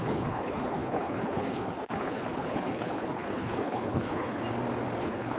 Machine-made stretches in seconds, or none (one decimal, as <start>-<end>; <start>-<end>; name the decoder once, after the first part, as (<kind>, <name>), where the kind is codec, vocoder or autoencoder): 0.0-4.4 (codec, HILCodec); 5.0-5.4